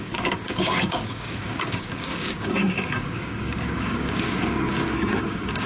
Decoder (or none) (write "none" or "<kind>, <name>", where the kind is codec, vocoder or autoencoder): codec, DAC